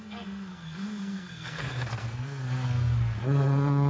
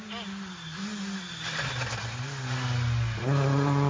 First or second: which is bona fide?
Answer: second